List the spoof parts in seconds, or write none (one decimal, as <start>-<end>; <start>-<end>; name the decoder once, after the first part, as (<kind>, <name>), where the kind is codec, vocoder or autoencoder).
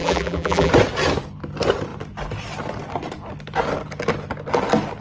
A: 0.0-0.7 (vocoder, BigVGAN v2)